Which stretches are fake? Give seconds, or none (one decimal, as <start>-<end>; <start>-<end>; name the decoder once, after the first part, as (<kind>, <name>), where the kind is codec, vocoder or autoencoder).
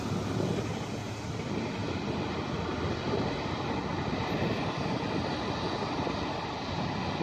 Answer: none